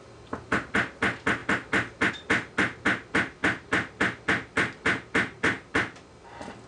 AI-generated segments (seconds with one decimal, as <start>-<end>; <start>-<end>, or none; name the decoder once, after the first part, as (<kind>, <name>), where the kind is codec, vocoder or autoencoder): none